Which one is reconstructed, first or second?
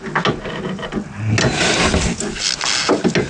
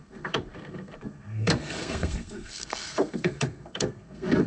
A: second